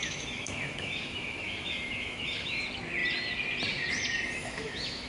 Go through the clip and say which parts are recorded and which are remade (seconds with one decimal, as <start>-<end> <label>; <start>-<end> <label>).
0.0-2.6 remade; 2.6-4.4 recorded; 4.4-5.1 remade